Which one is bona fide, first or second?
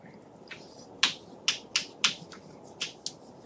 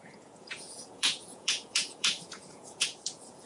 first